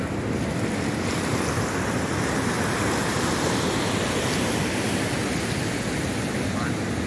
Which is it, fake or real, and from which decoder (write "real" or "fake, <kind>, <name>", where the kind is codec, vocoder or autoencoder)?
real